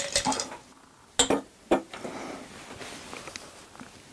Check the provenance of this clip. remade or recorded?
recorded